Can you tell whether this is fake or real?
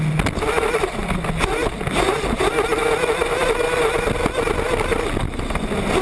real